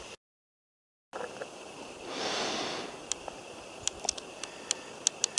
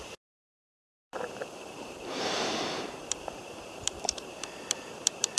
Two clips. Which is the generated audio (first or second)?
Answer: second